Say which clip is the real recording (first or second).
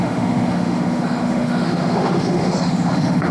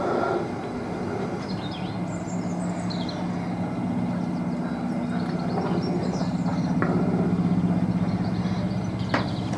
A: second